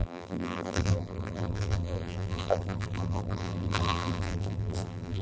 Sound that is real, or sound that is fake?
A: fake